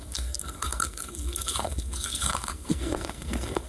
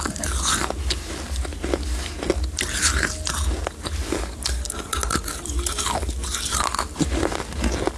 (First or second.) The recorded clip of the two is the second